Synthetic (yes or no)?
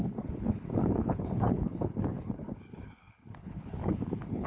yes